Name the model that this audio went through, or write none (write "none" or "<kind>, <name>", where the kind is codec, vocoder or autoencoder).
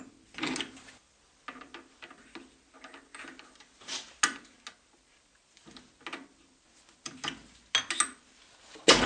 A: none